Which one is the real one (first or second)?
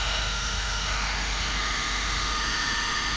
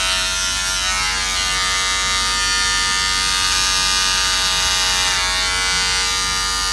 second